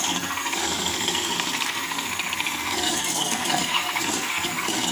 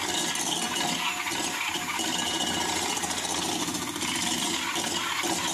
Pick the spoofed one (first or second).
first